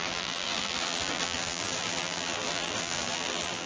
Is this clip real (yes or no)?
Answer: no